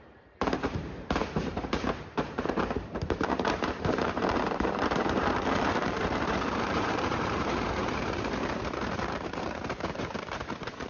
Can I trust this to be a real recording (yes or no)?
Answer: no